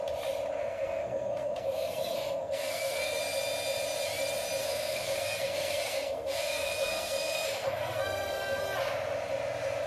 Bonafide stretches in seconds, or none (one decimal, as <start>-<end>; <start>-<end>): 0.0-0.6; 3.2-4.6; 8.6-9.9

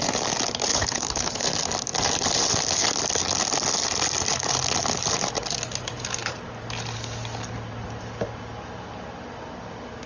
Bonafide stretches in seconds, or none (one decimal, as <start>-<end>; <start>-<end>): 0.0-0.7; 1.4-10.1

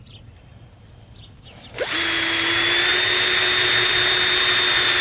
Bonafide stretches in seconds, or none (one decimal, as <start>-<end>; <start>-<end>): 0.0-5.0

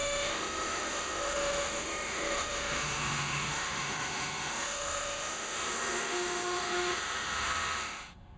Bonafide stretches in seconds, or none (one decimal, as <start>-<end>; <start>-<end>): none